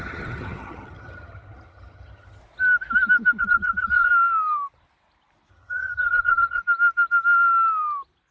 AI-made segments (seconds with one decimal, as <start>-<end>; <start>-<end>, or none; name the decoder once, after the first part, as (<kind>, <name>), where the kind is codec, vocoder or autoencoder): 0.0-2.4 (vocoder, HiFi-GAN); 3.4-4.1; 5.5-6.6